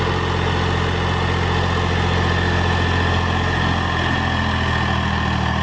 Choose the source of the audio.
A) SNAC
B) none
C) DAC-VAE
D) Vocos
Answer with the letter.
B